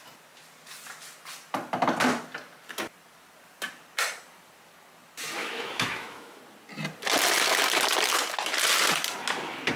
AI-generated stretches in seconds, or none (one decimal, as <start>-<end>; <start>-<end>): 5.4-6.4

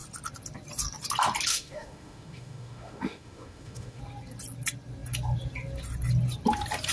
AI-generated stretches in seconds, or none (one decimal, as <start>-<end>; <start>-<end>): 1.5-4.0